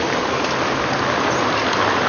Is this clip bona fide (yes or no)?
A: yes